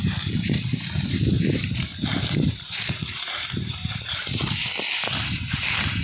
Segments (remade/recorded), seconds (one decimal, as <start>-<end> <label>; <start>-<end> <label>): 0.0-4.6 remade; 4.6-5.2 recorded; 5.2-6.0 remade